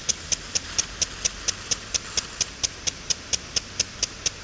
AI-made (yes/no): no